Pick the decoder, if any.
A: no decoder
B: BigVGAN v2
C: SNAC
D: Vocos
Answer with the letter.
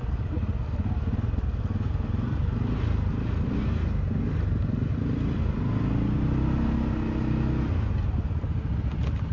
A